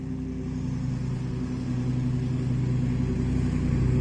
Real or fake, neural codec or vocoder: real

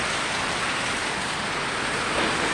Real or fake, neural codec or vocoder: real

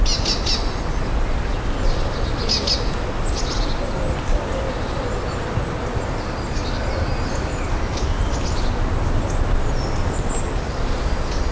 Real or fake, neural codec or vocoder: real